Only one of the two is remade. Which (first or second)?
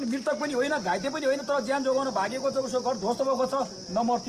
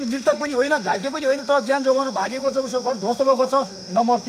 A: second